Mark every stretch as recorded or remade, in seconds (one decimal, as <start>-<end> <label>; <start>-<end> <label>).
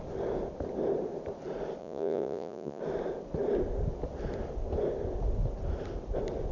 0.0-1.8 recorded; 1.8-2.8 remade; 2.8-6.5 recorded